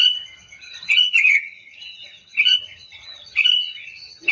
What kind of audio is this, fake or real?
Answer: fake